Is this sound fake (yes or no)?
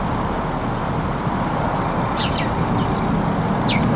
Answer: no